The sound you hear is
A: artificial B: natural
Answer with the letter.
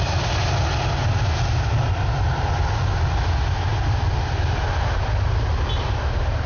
B